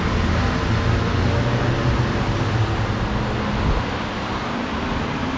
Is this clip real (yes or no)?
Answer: yes